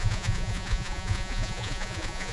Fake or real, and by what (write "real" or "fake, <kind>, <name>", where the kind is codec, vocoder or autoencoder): fake, vocoder, Vocos